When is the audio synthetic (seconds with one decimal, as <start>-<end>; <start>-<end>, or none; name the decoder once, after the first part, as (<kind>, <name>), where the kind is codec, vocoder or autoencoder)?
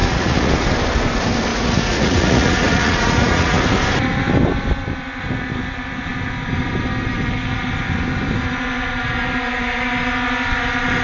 0.0-0.5 (vocoder, Vocos); 1.5-3.6